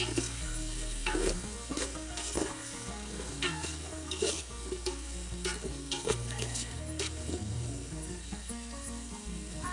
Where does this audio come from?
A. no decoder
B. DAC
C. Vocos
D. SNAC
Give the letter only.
D